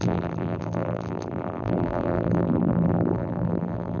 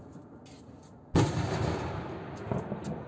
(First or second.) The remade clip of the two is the first